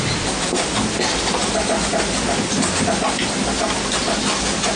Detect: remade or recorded recorded